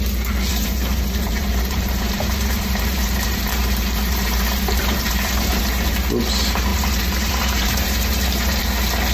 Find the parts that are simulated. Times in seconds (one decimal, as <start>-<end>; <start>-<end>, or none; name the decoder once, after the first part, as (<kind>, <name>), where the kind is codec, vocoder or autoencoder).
0.5-5.6 (vocoder, BigVGAN v2); 6.7-8.6